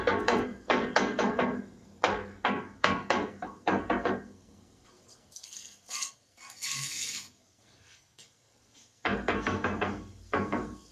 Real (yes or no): no